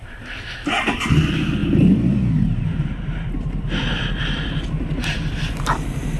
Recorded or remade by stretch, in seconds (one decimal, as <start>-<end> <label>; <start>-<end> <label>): 0.0-6.2 recorded